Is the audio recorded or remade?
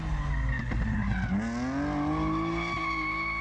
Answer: recorded